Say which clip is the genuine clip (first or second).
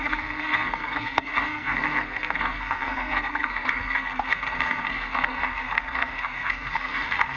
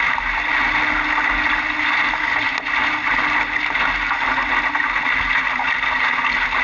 second